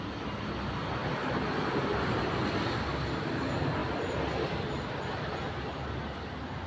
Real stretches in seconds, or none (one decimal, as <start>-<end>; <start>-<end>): 0.0-6.7